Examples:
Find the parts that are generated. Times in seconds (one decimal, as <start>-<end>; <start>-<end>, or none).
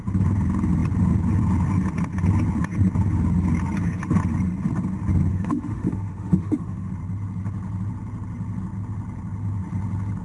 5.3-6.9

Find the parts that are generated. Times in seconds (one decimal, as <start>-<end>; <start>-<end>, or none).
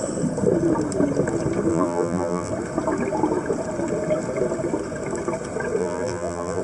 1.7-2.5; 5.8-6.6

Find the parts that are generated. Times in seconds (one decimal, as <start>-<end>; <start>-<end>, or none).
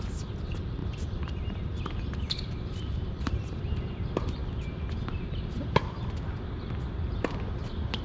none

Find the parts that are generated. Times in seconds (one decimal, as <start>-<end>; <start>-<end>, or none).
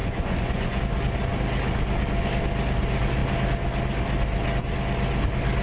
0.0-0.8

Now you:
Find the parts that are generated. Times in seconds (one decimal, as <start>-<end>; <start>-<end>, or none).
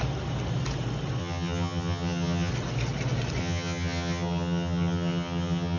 1.2-2.5; 3.4-5.8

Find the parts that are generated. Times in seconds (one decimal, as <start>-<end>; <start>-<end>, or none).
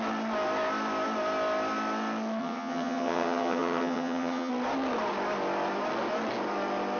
2.4-4.5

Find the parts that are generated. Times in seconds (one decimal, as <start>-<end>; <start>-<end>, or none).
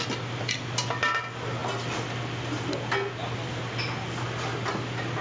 none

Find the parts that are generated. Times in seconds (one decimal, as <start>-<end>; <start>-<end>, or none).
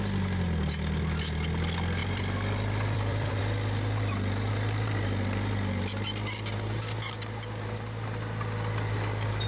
2.0-3.4